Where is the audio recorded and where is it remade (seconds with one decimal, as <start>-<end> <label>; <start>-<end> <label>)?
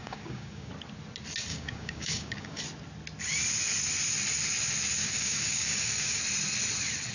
0.0-0.7 remade; 0.7-1.5 recorded; 1.5-2.6 remade; 2.6-5.0 recorded; 5.0-6.2 remade; 6.2-7.1 recorded